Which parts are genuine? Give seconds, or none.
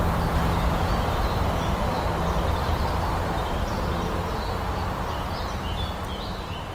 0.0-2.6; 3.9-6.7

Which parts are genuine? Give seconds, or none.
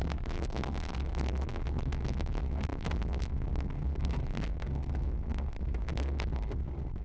none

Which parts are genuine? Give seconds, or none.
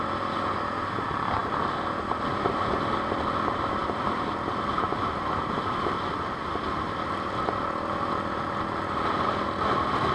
0.0-10.1